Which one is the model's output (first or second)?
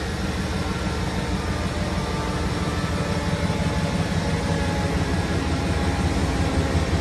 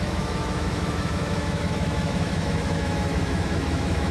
second